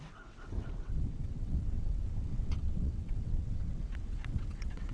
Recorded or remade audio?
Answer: remade